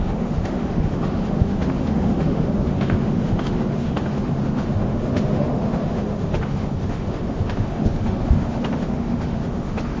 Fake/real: fake